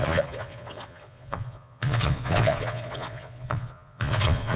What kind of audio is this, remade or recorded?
remade